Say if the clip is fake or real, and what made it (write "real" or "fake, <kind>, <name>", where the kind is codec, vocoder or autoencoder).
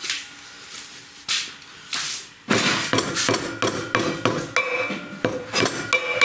real